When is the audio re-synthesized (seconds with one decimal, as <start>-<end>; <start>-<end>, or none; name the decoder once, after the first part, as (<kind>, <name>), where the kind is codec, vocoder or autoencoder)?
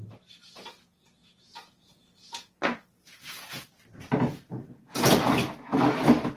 1.2-3.7 (vocoder, Vocos); 4.5-5.3